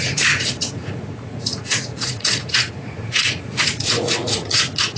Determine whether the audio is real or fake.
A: fake